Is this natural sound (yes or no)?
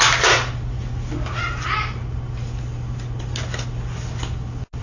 yes